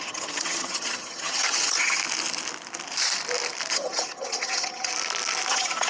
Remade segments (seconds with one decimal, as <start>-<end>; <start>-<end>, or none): 0.0-2.0; 3.7-4.9; 5.5-5.9